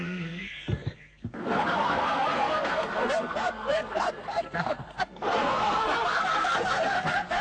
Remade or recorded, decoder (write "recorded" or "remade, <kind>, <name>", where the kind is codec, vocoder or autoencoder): remade, codec, SNAC